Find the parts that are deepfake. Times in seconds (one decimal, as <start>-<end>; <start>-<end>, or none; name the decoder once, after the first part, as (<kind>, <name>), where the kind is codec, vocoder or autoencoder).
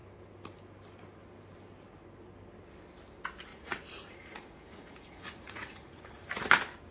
3.5-6.4 (vocoder, Vocos)